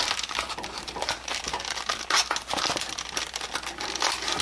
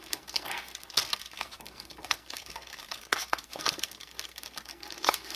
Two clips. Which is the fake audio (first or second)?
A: second